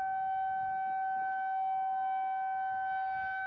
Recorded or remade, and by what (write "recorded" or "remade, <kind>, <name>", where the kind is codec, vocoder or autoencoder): recorded